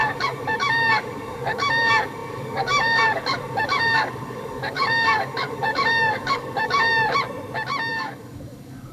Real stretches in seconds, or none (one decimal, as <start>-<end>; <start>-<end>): 6.9-7.9